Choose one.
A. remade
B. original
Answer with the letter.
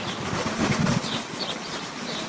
B